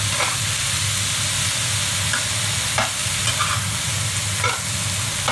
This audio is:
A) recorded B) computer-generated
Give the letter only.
A